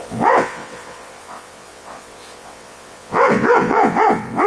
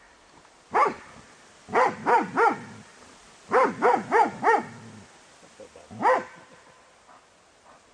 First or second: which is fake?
first